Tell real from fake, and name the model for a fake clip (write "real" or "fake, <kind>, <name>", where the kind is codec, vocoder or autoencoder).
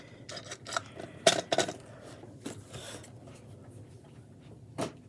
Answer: real